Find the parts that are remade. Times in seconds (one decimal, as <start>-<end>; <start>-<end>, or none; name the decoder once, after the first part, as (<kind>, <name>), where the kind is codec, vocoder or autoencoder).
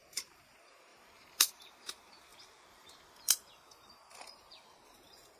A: 0.0-0.5 (vocoder, BigVGAN v2); 0.9-1.5; 2.3-3.4